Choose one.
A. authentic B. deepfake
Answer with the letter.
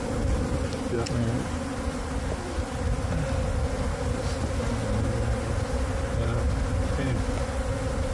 A